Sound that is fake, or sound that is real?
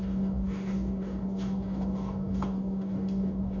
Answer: fake